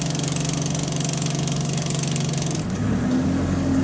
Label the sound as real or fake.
fake